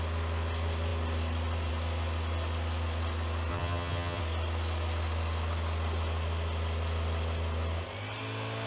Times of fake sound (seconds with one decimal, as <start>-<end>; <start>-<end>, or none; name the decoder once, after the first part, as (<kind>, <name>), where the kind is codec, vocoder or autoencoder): 3.5-4.2 (vocoder, HiFi-GAN)